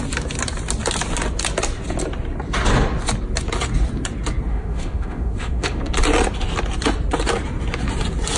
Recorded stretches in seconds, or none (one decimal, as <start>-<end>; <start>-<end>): 0.0-4.5; 5.8-8.4